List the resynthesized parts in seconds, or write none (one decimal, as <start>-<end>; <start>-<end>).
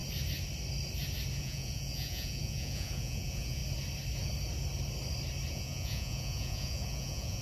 1.4-3.6; 5.5-7.4